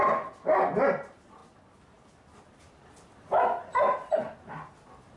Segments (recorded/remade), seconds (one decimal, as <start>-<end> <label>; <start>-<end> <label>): 0.0-5.2 recorded